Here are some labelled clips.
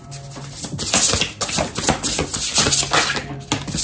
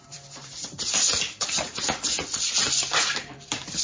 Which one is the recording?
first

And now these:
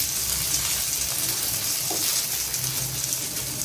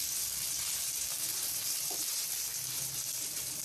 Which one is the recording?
first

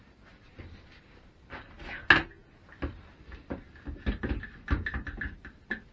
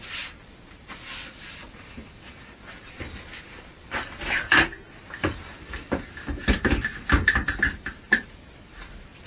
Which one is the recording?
first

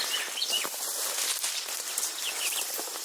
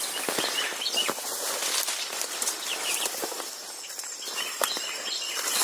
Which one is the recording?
first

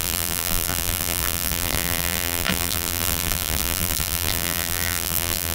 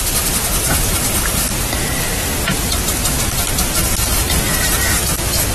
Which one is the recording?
second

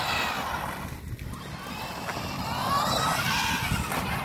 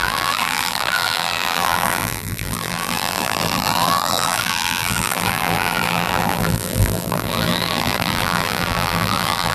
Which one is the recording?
first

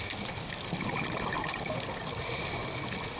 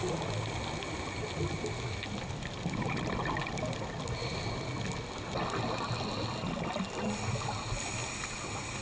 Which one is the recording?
second